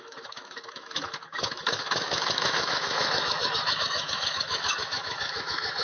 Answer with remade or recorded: remade